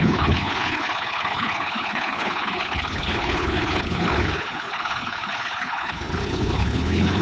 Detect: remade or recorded remade